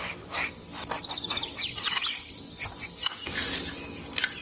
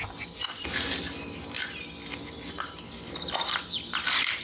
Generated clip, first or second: first